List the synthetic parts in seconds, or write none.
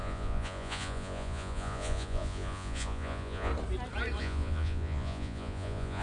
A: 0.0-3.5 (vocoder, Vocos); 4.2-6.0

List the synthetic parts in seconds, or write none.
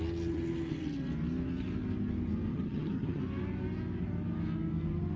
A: 2.5-3.2 (vocoder, HiFi-GAN)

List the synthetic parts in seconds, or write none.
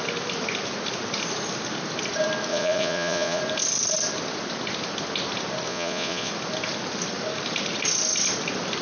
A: 2.5-3.4 (vocoder, Vocos); 5.7-6.3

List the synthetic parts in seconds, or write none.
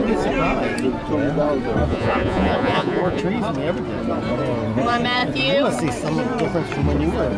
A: 1.9-3.2 (vocoder, Vocos)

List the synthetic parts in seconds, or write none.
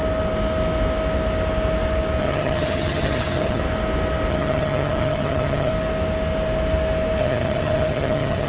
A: 2.2-3.6 (vocoder, HiFi-GAN); 4.3-5.7; 7.2-8.5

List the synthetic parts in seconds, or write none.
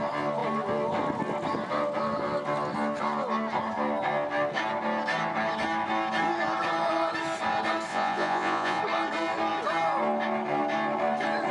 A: 7.9-8.8 (vocoder, Vocos)